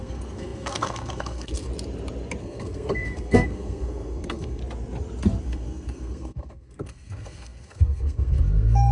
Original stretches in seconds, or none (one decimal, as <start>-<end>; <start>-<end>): 1.7-2.4; 4.6-5.4